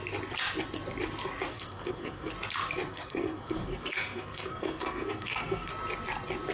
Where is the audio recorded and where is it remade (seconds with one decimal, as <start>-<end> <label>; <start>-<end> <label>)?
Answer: 0.0-1.5 recorded; 1.5-2.3 remade; 2.3-2.9 recorded; 2.9-5.7 remade; 5.7-6.5 recorded